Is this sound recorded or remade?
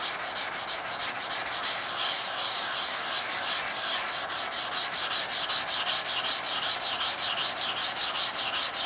recorded